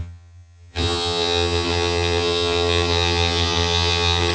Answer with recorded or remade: remade